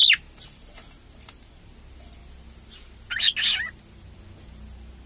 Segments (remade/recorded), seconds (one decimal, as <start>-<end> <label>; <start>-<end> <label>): 0.0-5.1 recorded